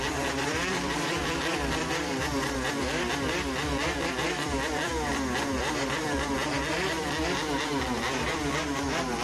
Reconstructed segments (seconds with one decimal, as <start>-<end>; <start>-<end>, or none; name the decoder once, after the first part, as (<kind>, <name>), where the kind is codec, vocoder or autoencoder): 0.0-4.9 (vocoder, BigVGAN v2); 5.6-9.2